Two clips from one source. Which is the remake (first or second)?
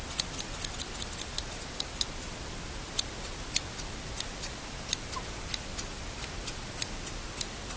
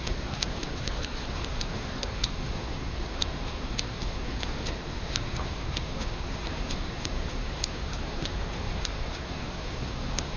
second